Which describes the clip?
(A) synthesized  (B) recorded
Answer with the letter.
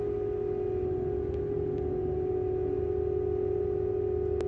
B